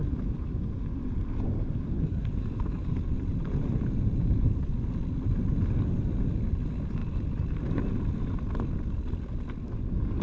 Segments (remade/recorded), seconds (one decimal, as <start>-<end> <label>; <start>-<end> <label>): 0.0-2.1 recorded; 2.1-3.7 remade; 3.7-10.2 recorded